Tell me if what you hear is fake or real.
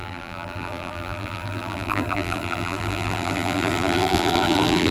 fake